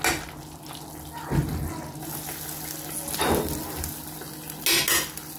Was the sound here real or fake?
real